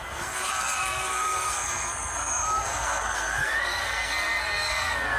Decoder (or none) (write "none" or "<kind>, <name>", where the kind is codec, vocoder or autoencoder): codec, SNAC